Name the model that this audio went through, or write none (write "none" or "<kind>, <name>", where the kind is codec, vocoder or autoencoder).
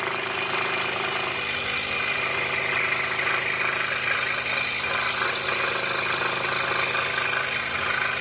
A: none